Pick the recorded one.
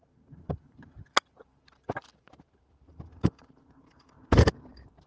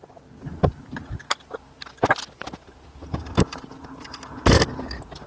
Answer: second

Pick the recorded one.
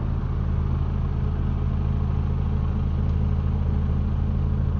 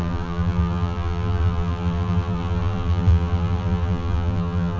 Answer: first